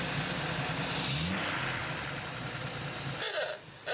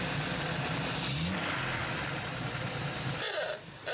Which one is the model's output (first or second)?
second